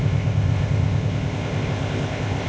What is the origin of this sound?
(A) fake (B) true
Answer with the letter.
A